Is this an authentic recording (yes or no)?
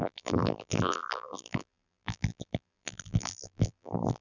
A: no